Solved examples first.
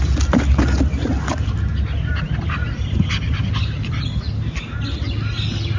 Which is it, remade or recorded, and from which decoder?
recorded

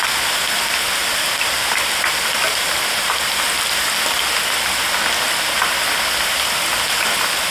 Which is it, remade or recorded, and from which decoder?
recorded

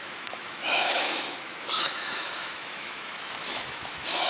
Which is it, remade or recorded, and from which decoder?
remade, autoencoder, DAC-VAE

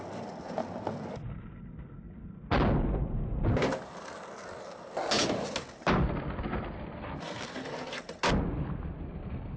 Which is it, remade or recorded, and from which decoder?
recorded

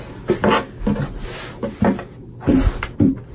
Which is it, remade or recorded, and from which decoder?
recorded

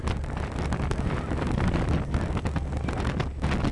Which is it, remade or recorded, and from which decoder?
recorded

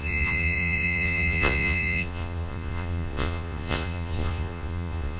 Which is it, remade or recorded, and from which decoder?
remade, vocoder, Vocos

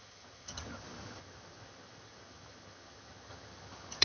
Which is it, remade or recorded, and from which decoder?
remade, vocoder, HiFi-GAN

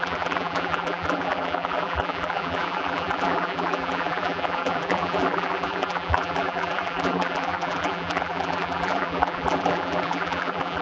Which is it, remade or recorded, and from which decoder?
remade, vocoder, BigVGAN v2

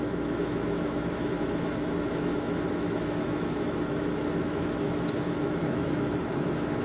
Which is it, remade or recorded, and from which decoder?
remade, autoencoder, DAC-VAE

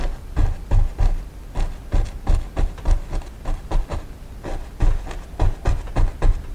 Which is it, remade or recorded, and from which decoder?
recorded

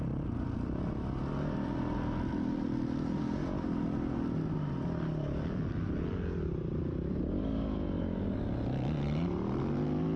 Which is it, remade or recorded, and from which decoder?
recorded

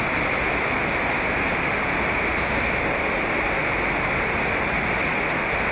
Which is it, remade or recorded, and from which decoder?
recorded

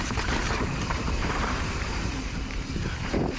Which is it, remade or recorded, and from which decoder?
remade, vocoder, BigVGAN v2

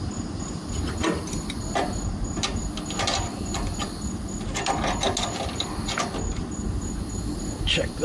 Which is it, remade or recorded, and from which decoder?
recorded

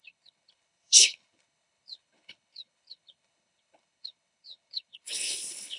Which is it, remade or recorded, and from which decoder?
remade, codec, HILCodec